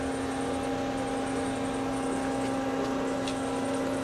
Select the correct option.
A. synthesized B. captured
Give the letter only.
B